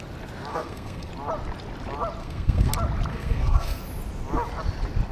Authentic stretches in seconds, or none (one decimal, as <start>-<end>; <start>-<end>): 0.0-0.5; 1.1-2.2; 2.7-3.1; 3.8-5.1